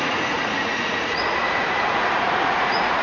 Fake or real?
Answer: fake